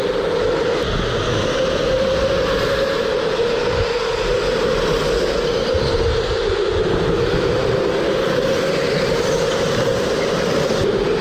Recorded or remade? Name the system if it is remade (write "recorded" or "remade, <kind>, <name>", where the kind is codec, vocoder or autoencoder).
recorded